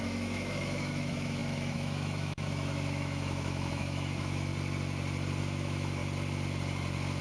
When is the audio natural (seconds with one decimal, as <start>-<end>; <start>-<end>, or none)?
4.5-5.4; 6.0-7.2